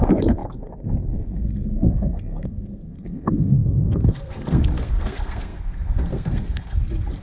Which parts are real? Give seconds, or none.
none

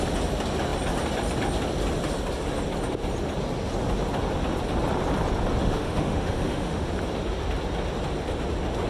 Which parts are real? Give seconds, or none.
0.0-5.6; 6.9-8.9

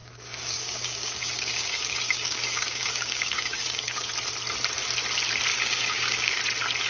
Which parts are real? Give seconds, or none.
4.1-5.5; 6.4-6.9

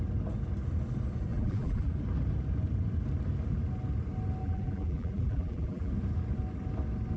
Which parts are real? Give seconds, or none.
0.0-1.3; 1.9-4.4; 5.9-7.2

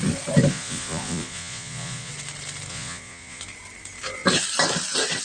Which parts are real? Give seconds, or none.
0.0-0.5; 2.1-2.7; 3.4-5.2